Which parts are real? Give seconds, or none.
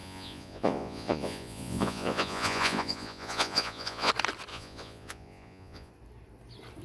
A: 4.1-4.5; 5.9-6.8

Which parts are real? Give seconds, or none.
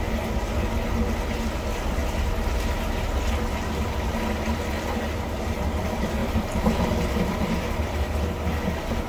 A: 0.0-9.1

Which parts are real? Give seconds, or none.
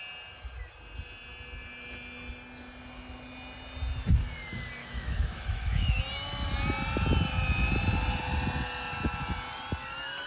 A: 0.0-4.8; 6.0-10.3